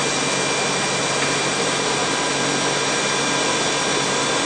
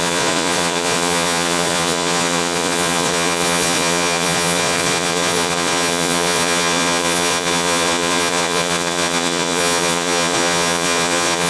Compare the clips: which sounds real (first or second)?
first